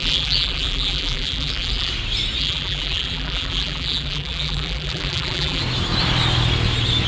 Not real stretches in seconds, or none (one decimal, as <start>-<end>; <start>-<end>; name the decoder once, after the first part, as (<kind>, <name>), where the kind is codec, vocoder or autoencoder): 0.0-1.9 (vocoder, BigVGAN v2); 2.4-5.6